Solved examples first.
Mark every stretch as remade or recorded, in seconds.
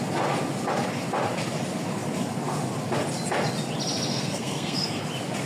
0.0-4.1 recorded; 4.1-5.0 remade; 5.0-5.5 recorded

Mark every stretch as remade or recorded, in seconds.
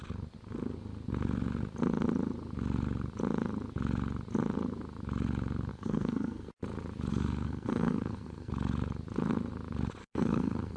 0.0-5.7 recorded; 5.7-6.5 remade; 6.5-7.1 recorded; 7.1-8.5 remade; 8.5-10.0 recorded; 10.0-10.8 remade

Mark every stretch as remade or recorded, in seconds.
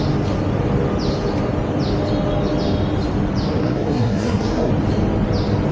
0.0-3.6 recorded; 3.6-4.7 remade; 4.7-5.7 recorded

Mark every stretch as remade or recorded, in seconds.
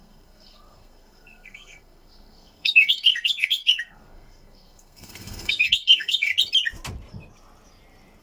0.0-6.3 remade; 6.3-8.2 recorded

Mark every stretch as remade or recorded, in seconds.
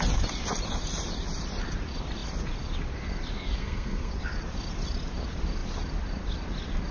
0.0-3.6 recorded; 3.6-4.1 remade; 4.1-6.9 recorded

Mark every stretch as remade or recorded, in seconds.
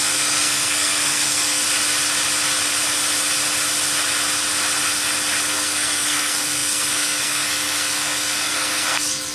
0.0-1.6 remade; 1.6-5.5 recorded; 5.5-9.3 remade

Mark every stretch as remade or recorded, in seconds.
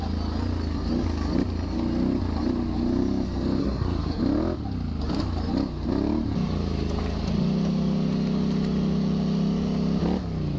0.0-3.6 recorded; 3.6-4.2 remade; 4.2-10.6 recorded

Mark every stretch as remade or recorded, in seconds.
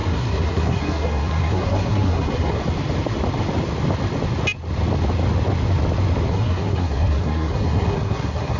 0.0-2.6 remade; 2.6-6.3 recorded; 6.3-8.6 remade